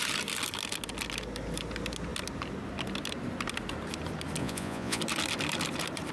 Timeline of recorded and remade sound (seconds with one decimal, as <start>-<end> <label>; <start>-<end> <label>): 0.0-4.4 recorded; 4.4-5.0 remade; 5.0-6.1 recorded